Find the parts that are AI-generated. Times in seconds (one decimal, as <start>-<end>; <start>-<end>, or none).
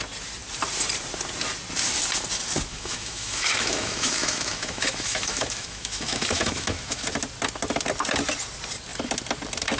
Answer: 2.7-7.1